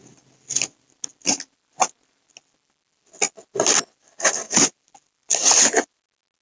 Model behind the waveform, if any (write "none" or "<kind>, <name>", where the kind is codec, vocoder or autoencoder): none